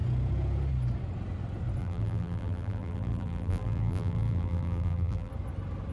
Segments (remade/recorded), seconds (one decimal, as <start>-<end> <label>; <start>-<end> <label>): 0.0-1.8 recorded; 1.8-5.3 remade; 5.3-5.9 recorded